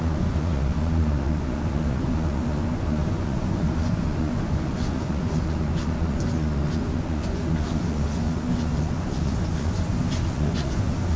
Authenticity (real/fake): fake